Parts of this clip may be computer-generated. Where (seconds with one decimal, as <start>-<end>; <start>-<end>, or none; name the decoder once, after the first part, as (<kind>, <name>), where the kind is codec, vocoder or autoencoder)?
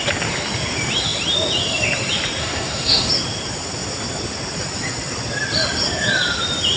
2.4-3.1 (codec, SNAC)